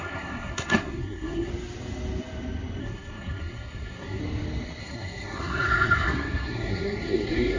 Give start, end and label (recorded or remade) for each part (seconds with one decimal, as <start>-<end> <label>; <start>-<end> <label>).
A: 0.0-1.5 remade; 1.5-2.8 recorded; 2.8-4.2 remade; 4.2-4.8 recorded; 4.8-7.6 remade